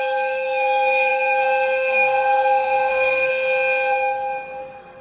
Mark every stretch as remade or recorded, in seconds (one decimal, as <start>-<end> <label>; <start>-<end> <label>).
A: 0.0-3.3 remade; 3.3-4.6 recorded; 4.6-5.0 remade